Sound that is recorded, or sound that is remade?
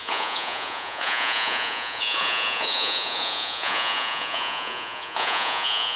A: remade